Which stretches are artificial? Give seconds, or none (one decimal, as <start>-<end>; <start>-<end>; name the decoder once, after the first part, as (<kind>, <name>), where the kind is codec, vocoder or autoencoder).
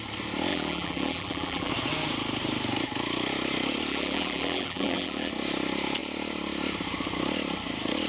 0.5-1.7 (vocoder, BigVGAN v2); 3.9-5.3